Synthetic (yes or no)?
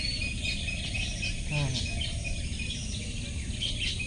no